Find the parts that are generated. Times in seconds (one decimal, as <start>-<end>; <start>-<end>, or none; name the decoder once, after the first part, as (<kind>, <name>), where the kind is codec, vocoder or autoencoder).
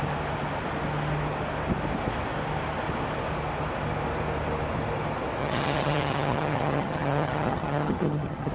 5.4-8.5 (vocoder, HiFi-GAN)